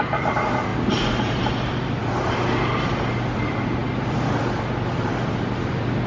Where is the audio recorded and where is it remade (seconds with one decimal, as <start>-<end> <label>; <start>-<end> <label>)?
0.0-2.0 remade; 2.0-3.1 recorded; 3.1-6.1 remade